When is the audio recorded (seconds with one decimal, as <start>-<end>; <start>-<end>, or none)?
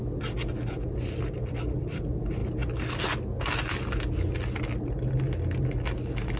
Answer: 0.0-6.4